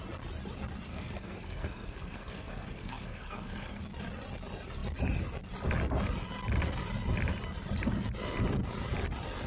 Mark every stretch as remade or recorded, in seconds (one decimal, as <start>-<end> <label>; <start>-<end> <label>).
0.0-0.9 recorded; 0.9-3.8 remade; 3.8-9.5 recorded